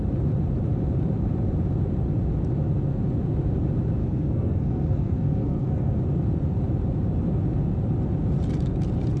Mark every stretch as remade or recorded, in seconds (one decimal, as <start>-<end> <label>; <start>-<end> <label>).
0.0-4.0 recorded; 4.0-6.0 remade; 6.0-9.2 recorded